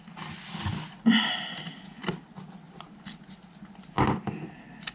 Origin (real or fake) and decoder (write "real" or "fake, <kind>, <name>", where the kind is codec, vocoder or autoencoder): real